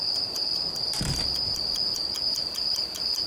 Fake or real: real